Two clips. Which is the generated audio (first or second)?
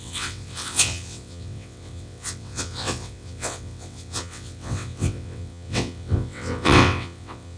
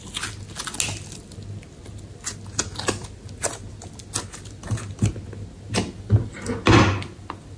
first